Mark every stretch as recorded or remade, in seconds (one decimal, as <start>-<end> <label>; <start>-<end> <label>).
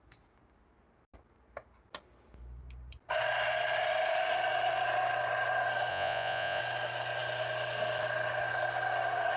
0.0-5.9 recorded; 5.9-6.6 remade; 6.6-9.4 recorded